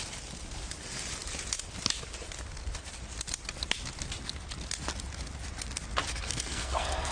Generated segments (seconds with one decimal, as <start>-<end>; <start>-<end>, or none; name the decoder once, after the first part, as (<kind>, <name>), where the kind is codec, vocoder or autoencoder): 6.1-7.1 (codec, SNAC)